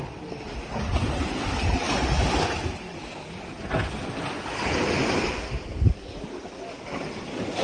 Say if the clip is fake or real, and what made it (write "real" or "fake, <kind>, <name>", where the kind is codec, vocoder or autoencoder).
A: real